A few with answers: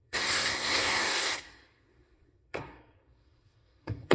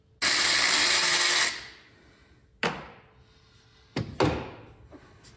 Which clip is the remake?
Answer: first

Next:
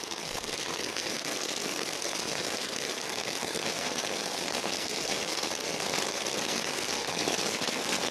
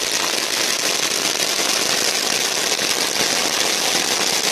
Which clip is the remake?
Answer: first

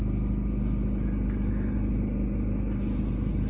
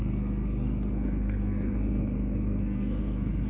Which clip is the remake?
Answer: second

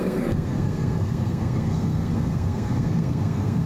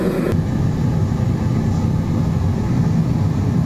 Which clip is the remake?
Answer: first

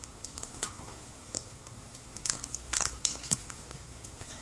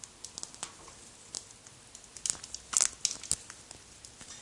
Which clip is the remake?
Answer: first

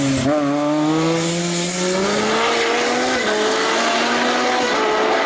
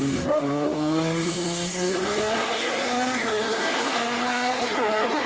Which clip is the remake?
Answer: second